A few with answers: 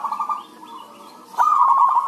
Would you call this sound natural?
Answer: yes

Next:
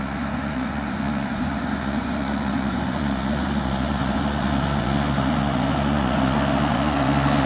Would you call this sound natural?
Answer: no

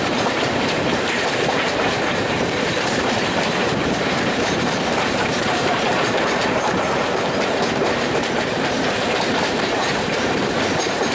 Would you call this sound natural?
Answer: no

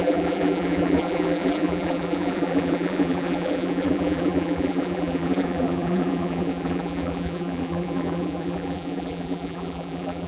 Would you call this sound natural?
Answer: no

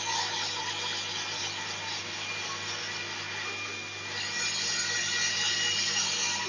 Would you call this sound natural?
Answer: yes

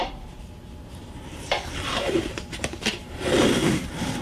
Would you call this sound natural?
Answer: no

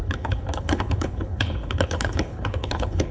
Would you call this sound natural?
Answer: no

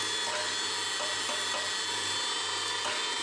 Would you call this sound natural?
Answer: yes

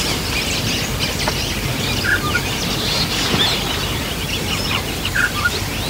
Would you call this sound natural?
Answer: yes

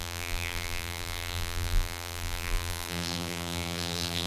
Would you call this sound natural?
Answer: no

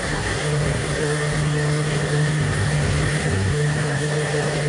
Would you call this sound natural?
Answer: no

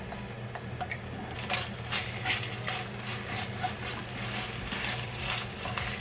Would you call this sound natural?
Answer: yes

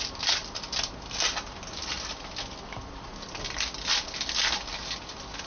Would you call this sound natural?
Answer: yes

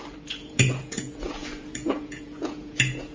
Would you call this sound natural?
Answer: no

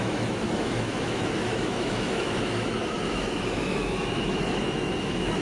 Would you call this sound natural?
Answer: no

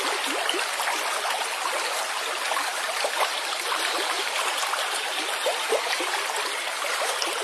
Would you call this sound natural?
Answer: yes